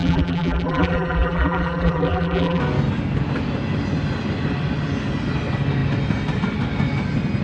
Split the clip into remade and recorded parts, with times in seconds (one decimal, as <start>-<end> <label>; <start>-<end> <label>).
0.0-2.6 remade; 2.6-7.4 recorded

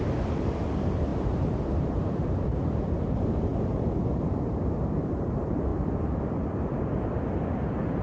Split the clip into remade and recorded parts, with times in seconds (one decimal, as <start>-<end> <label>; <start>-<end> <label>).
0.0-5.7 remade; 5.7-7.5 recorded; 7.5-8.0 remade